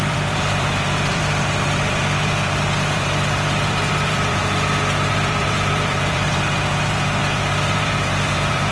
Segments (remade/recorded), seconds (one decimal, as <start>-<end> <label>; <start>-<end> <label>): 0.0-4.4 remade; 4.4-5.1 recorded; 5.1-8.7 remade